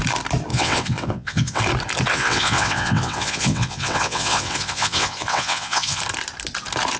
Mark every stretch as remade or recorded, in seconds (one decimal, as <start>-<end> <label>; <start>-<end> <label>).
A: 0.0-0.5 recorded; 0.5-1.6 remade; 1.6-2.1 recorded; 2.1-6.0 remade; 6.0-7.0 recorded